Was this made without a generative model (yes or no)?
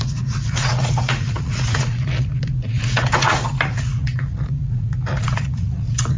no